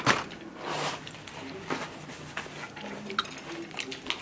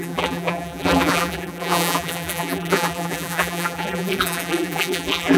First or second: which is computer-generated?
second